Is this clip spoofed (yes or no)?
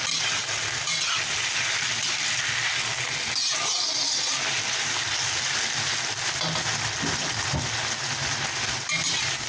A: no